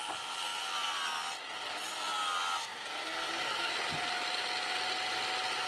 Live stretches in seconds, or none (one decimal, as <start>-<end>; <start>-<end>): 0.0-2.6; 3.7-5.7